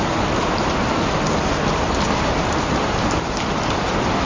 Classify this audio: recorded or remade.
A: recorded